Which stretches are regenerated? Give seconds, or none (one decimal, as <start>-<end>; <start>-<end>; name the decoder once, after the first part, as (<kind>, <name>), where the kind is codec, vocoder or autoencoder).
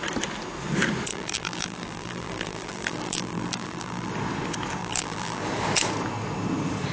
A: 1.1-4.1 (vocoder, BigVGAN v2); 4.8-5.4